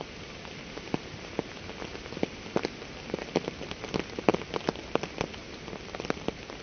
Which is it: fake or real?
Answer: real